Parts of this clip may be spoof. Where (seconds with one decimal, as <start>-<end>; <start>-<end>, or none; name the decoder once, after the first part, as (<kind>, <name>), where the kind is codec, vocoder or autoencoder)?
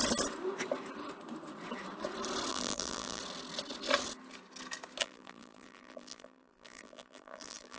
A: 2.5-3.2 (vocoder, BigVGAN v2); 5.0-7.8